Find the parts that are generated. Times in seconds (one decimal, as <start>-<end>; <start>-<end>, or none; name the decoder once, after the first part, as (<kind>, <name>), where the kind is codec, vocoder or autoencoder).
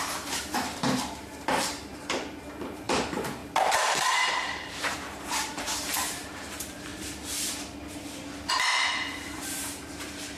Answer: 0.0-3.4 (vocoder, BigVGAN v2); 4.0-6.9; 8.5-10.4